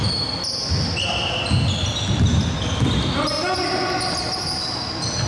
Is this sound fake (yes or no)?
no